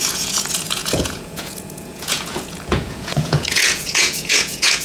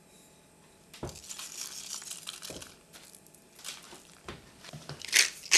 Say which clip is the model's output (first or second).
first